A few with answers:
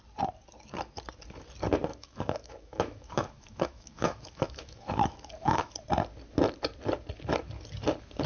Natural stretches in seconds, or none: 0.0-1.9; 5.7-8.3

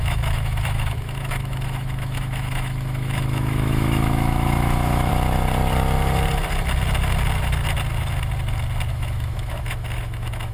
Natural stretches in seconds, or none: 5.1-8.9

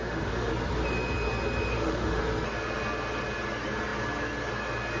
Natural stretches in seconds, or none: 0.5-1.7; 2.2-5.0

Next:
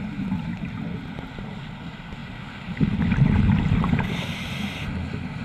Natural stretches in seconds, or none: 0.0-5.4

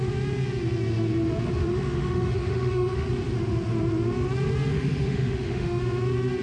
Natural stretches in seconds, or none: 0.0-1.7; 3.1-4.7; 5.8-6.4

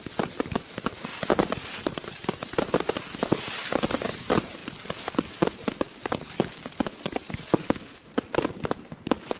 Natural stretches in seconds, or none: 0.0-7.6; 8.1-9.4